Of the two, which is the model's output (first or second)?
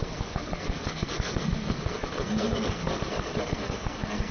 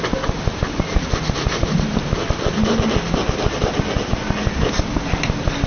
first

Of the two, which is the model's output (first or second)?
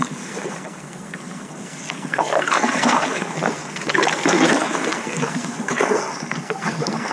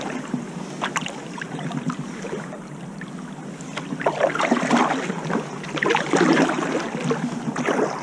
first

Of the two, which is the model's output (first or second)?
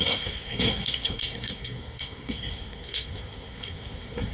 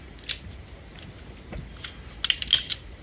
first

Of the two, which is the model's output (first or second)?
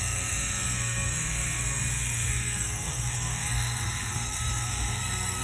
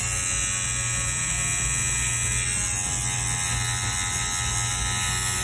first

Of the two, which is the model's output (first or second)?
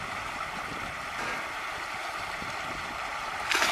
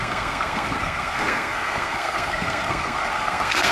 second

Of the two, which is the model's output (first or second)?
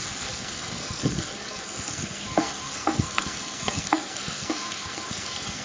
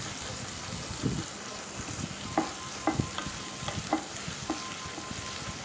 first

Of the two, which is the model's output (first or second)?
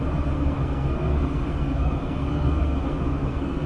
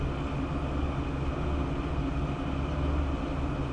first